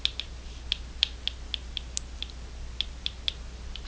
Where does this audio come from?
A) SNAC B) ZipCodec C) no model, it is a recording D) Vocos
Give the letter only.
C